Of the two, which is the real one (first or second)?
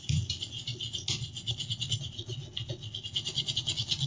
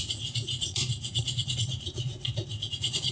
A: first